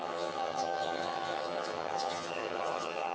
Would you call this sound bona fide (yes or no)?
no